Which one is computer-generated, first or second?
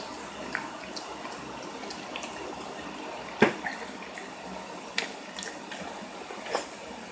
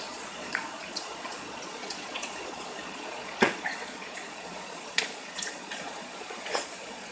second